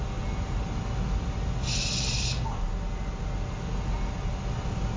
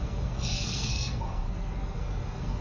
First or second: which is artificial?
second